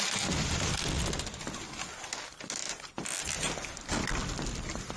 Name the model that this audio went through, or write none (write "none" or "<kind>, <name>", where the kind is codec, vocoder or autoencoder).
none